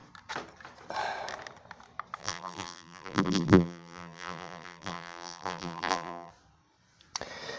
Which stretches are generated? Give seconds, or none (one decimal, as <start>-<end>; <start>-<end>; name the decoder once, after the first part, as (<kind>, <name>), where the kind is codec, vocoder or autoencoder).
2.2-6.3 (vocoder, BigVGAN v2)